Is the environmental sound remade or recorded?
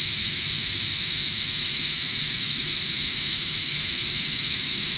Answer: remade